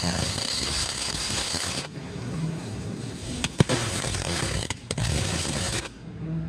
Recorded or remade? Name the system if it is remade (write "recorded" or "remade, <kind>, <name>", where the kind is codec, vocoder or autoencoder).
remade, codec, SNAC